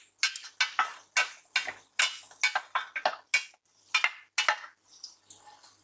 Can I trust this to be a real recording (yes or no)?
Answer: yes